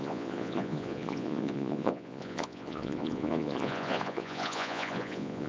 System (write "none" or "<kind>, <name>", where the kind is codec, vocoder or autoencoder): vocoder, Vocos